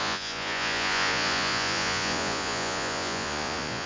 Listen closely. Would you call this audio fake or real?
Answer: fake